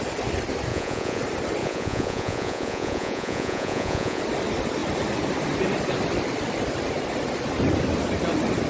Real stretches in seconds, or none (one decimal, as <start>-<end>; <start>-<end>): 0.0-0.7; 1.2-1.6; 4.2-8.7

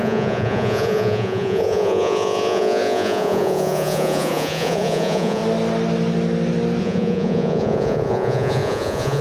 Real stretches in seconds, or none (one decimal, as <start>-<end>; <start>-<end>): 5.4-6.8